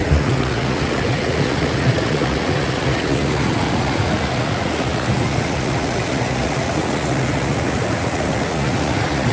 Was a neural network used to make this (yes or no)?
yes